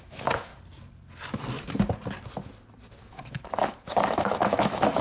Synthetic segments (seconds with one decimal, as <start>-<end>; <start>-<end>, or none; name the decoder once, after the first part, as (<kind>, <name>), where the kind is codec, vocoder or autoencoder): 0.0-0.5 (autoencoder, DAC-VAE); 3.0-5.0

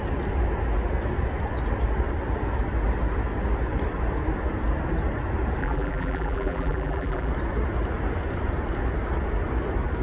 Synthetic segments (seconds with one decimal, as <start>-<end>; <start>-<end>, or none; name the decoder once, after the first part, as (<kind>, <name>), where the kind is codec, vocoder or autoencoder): 5.6-7.3 (vocoder, BigVGAN v2)